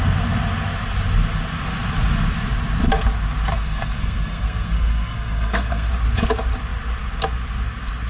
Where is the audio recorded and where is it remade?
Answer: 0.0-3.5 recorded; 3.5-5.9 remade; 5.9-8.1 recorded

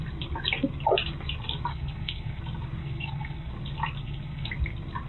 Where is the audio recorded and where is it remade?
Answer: 0.0-1.7 recorded; 1.7-2.4 remade; 2.4-2.8 recorded; 2.8-3.5 remade; 3.5-4.0 recorded; 4.0-4.5 remade; 4.5-5.1 recorded

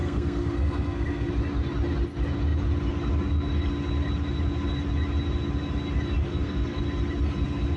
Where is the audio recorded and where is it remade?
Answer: 0.0-1.3 remade; 1.3-6.2 recorded; 6.2-6.8 remade; 6.8-7.8 recorded

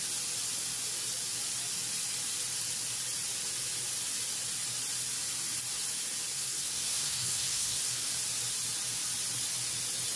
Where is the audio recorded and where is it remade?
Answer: 0.0-6.3 recorded; 6.3-8.1 remade; 8.1-10.2 recorded